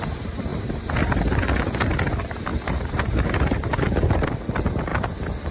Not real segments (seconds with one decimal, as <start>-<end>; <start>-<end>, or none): 0.5-1.2; 2.5-4.3